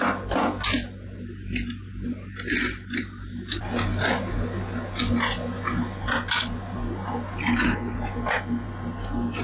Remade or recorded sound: recorded